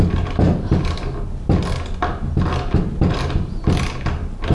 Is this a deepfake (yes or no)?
no